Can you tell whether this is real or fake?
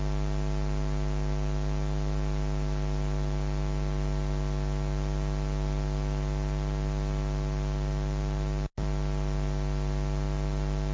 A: real